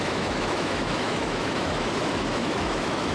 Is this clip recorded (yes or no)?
no